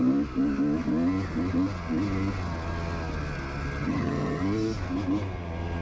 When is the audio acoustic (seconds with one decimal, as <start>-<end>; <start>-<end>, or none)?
0.0-3.8; 4.4-5.8